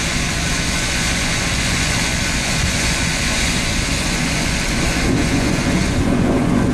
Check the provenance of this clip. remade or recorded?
remade